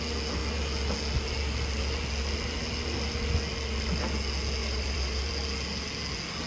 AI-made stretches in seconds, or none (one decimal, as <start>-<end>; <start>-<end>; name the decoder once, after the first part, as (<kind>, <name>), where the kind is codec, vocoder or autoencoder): 4.6-5.3 (vocoder, BigVGAN v2)